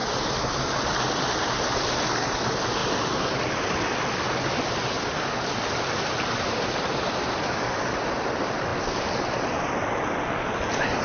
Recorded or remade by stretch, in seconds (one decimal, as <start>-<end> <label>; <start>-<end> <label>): 0.0-11.0 recorded